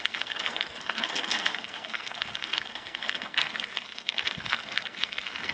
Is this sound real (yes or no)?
no